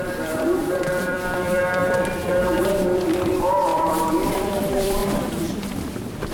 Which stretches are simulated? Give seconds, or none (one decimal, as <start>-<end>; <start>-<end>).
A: 0.0-1.8; 2.7-5.0